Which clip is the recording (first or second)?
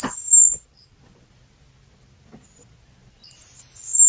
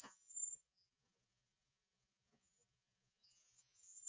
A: first